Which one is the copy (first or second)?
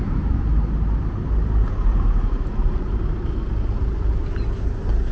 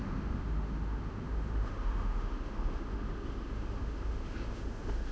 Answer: second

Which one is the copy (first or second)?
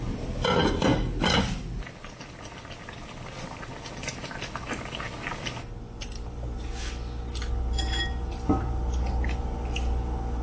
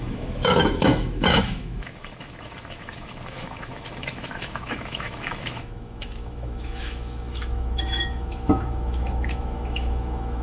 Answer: second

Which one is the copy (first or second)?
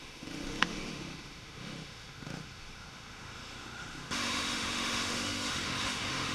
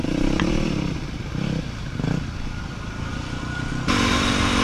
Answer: first